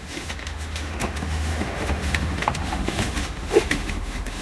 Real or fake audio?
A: fake